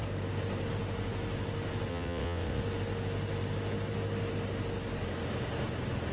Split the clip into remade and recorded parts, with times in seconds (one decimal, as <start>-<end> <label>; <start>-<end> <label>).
0.0-1.9 recorded; 1.9-2.6 remade; 2.6-6.1 recorded